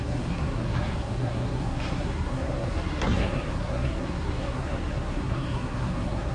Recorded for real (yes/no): no